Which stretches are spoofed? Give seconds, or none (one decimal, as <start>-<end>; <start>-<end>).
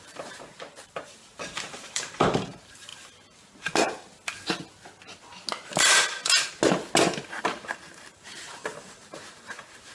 0.0-2.9; 7.4-9.9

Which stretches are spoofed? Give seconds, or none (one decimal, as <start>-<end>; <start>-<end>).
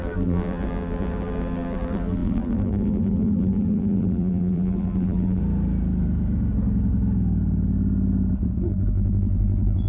0.0-5.4; 8.6-9.9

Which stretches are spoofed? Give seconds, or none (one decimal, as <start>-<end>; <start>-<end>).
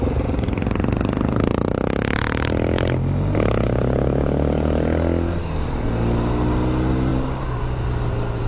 none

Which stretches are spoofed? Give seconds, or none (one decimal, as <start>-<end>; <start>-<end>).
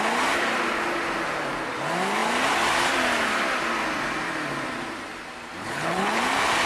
5.6-6.2